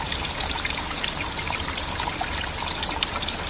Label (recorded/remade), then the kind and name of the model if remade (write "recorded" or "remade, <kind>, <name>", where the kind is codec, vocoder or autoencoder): remade, vocoder, BigVGAN v2